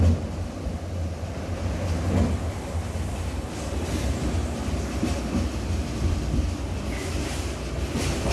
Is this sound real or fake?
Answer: real